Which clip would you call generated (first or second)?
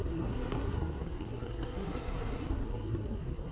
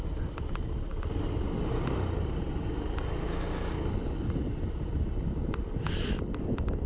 first